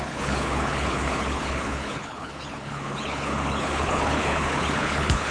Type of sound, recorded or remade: remade